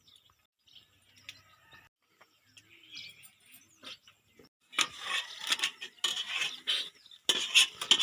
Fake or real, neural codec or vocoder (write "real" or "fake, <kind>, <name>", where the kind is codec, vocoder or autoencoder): real